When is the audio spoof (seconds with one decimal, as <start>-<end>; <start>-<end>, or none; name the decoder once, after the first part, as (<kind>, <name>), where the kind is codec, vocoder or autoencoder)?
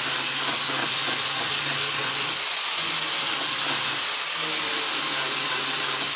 0.8-1.5 (vocoder, Vocos); 2.0-2.9